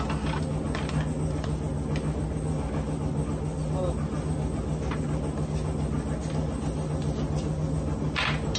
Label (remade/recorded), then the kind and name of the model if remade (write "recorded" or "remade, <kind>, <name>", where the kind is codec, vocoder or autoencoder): recorded